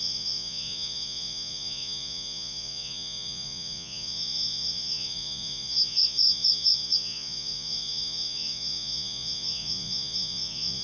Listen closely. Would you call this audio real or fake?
fake